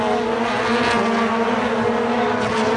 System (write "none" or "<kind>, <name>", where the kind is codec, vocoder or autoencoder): none